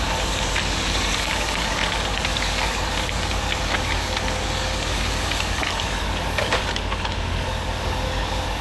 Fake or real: fake